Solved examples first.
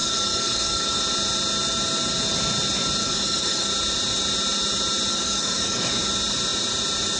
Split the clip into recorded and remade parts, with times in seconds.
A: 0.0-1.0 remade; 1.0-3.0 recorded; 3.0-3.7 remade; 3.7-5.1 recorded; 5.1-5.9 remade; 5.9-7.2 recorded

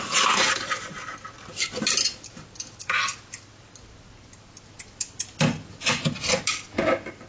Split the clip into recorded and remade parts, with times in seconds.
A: 0.0-7.3 recorded

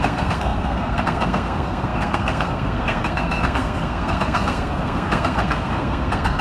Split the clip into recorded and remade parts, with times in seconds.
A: 0.0-6.4 remade

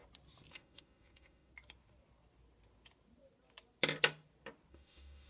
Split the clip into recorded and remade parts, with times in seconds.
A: 0.0-0.5 recorded; 0.5-1.5 remade; 1.5-4.7 recorded; 4.7-5.3 remade

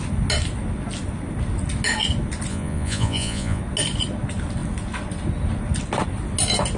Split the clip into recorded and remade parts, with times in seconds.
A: 0.0-2.5 recorded; 2.5-3.6 remade; 3.6-6.8 recorded

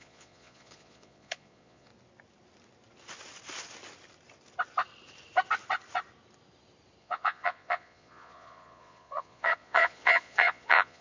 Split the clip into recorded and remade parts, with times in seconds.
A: 0.0-1.9 remade; 1.9-7.0 recorded; 7.0-11.0 remade

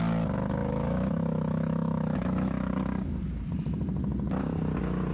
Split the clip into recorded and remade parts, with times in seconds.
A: 0.0-0.6 recorded; 0.6-2.7 remade; 2.7-5.1 recorded